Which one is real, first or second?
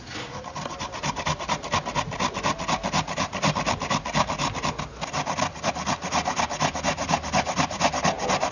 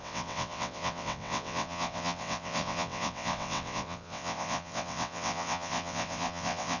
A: first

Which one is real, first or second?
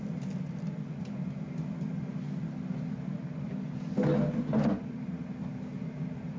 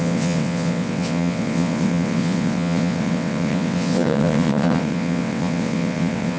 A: first